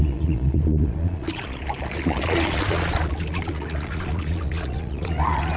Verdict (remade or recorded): remade